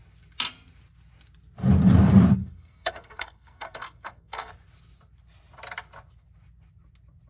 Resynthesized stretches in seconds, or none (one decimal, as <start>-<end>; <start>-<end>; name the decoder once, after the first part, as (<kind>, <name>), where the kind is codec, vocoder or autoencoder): 2.4-4.5 (codec, SNAC)